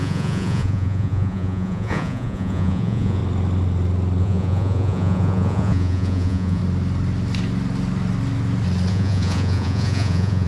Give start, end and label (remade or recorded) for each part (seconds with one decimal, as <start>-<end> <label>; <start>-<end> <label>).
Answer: 0.0-3.2 remade; 3.2-4.2 recorded; 4.2-6.6 remade; 6.6-8.9 recorded; 8.9-10.5 remade